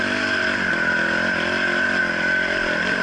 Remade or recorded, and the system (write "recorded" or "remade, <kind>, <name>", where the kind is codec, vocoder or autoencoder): recorded